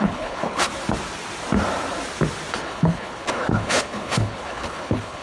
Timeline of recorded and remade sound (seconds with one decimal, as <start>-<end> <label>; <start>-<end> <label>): 0.0-0.7 remade; 0.7-2.6 recorded; 2.6-5.2 remade